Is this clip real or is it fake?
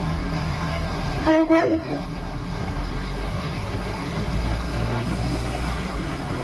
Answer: fake